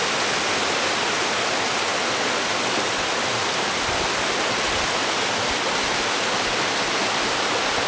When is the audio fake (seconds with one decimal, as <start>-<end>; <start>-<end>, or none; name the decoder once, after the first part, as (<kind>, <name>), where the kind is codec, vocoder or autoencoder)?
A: none